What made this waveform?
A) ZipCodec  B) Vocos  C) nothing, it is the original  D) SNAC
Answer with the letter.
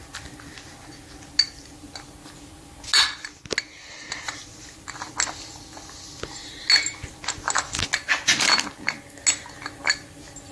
C